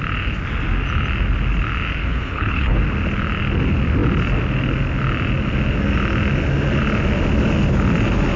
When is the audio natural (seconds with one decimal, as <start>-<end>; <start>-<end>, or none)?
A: 0.0-2.0; 2.8-8.4